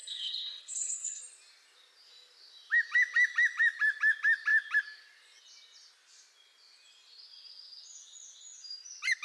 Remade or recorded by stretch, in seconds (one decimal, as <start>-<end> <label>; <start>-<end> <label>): 0.0-1.2 remade; 1.2-9.2 recorded